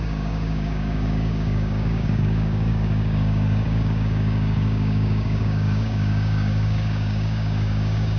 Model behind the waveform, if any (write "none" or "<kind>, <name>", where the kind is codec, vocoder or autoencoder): codec, DAC